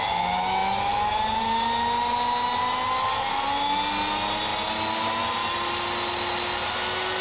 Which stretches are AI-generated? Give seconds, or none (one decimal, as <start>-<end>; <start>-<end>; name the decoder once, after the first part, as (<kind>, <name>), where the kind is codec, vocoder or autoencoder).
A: none